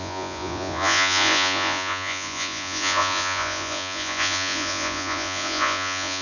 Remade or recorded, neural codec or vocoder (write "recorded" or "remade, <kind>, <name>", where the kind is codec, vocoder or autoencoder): remade, vocoder, Vocos